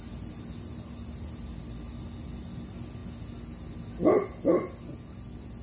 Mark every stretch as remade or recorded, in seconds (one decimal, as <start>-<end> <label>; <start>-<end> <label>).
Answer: 0.0-5.6 recorded